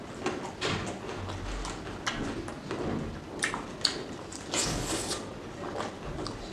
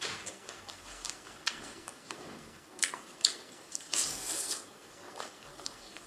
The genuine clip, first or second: first